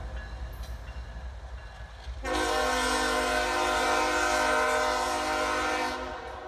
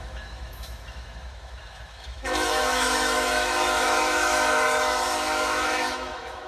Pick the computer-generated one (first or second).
second